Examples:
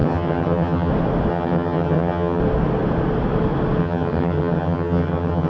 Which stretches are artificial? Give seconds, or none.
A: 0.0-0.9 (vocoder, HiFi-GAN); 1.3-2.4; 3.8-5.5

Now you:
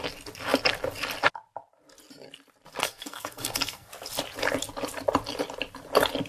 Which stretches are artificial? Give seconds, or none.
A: 2.8-3.9 (codec, SNAC)